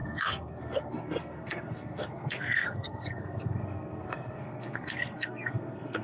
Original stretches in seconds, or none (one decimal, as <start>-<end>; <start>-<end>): none